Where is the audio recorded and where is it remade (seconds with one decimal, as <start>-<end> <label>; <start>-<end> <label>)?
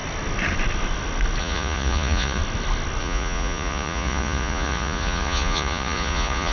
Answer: 0.0-1.4 recorded; 1.4-2.4 remade; 2.4-3.0 recorded; 3.0-6.5 remade